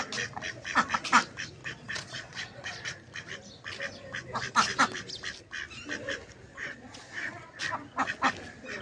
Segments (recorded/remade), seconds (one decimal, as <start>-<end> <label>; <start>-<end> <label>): 0.0-1.6 recorded; 1.6-3.0 remade; 3.0-6.5 recorded; 6.5-7.6 remade; 7.6-8.8 recorded